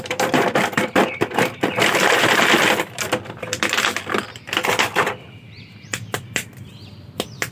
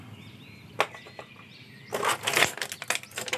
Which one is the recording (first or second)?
second